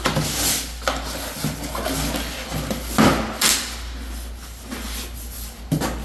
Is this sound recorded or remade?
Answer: recorded